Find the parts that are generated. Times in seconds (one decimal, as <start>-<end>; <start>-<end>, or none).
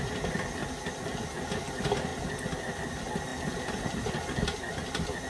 none